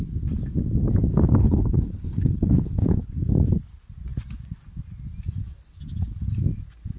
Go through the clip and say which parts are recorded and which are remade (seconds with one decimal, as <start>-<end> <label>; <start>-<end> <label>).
0.0-1.4 recorded; 1.4-3.1 remade; 3.1-7.0 recorded